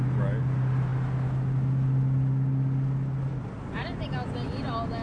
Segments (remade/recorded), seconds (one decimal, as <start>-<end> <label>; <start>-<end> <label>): 0.0-5.0 recorded